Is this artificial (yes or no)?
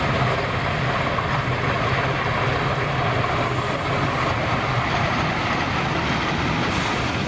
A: no